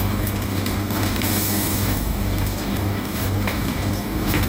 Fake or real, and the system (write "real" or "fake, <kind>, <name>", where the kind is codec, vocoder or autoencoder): fake, codec, DAC